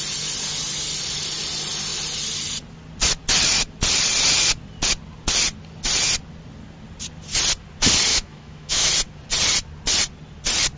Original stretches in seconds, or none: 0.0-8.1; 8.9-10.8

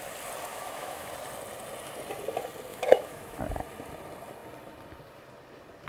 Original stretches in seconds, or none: 0.0-0.5; 1.1-2.7; 3.4-5.9

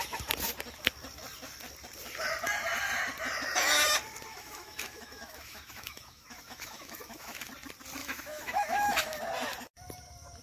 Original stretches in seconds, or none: 0.0-4.3; 7.5-8.0; 9.2-10.4

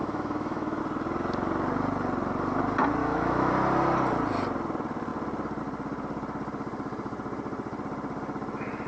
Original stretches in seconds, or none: 0.8-3.0; 3.5-8.9

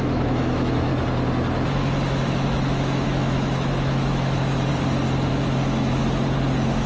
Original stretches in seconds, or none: 0.9-2.3; 4.7-5.3; 6.0-6.9

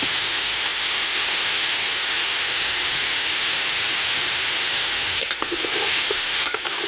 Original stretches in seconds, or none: none